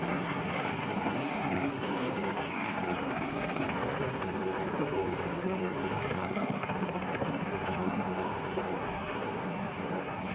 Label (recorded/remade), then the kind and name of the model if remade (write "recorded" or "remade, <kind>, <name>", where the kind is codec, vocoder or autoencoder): remade, codec, SNAC